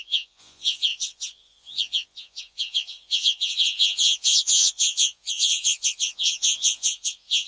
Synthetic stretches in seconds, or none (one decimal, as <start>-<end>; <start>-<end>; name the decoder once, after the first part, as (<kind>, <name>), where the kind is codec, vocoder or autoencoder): 0.0-7.5 (vocoder, Vocos)